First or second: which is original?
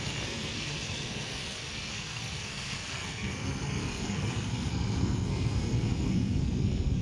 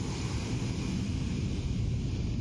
second